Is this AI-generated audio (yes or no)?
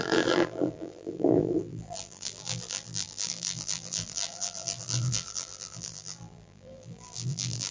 yes